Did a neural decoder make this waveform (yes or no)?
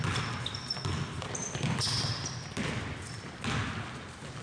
no